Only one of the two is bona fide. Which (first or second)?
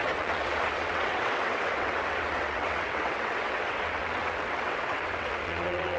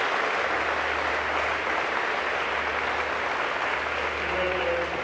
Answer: second